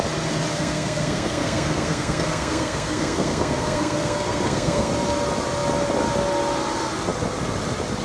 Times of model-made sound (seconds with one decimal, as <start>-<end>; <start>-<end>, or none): 0.5-4.9